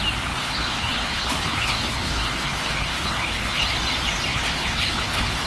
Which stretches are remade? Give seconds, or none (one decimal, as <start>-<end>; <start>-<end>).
0.4-3.7; 4.3-5.5